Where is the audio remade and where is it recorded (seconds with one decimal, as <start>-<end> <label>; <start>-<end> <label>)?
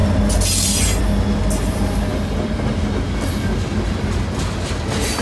0.0-5.2 recorded